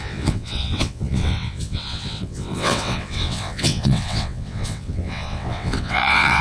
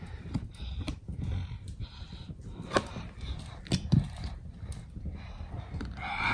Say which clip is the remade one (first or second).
first